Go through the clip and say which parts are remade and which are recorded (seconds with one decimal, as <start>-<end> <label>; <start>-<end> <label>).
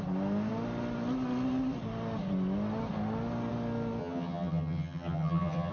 0.0-4.0 recorded; 4.0-5.7 remade